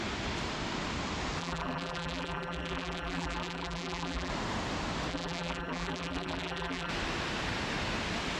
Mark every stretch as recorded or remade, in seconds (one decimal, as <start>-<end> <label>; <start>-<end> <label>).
0.0-1.4 recorded; 1.4-4.3 remade; 4.3-5.1 recorded; 5.1-6.9 remade; 6.9-8.4 recorded